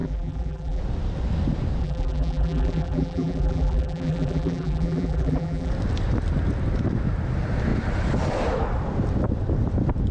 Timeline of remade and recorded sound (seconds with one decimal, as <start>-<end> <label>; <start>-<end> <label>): 0.0-0.8 remade; 0.8-1.8 recorded; 1.8-5.7 remade; 5.7-10.1 recorded